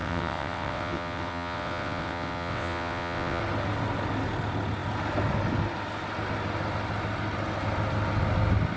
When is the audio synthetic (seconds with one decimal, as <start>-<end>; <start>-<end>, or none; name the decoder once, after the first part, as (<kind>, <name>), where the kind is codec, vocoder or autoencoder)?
0.0-3.4 (vocoder, WaveNeXt)